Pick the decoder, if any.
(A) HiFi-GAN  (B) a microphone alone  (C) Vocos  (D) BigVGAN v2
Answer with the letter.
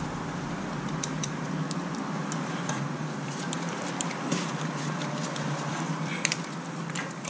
D